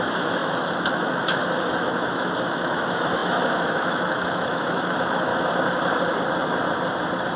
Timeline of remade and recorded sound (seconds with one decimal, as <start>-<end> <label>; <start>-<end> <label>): 0.0-5.3 remade; 5.3-7.4 recorded